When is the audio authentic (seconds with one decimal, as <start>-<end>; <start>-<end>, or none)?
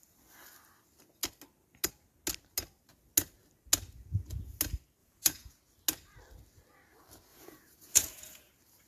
0.0-5.0; 5.6-7.3; 8.5-8.9